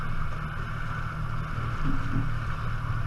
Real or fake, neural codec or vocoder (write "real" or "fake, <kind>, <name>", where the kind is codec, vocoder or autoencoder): real